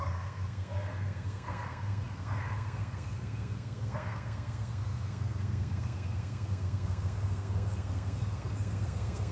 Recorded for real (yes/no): no